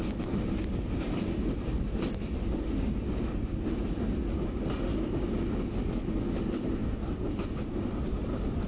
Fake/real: real